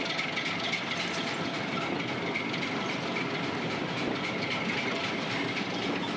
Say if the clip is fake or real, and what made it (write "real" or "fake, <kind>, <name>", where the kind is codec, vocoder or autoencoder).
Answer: real